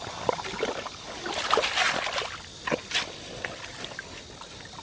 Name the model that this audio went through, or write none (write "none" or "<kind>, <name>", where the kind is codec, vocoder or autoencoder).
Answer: none